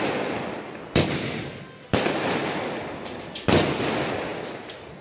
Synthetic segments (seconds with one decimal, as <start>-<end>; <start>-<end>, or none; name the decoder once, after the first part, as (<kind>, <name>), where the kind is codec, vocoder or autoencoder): none